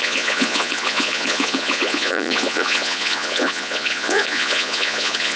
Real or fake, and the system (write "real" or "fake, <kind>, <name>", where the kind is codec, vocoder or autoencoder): fake, vocoder, Vocos